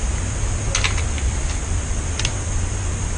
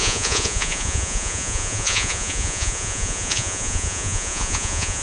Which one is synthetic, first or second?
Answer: second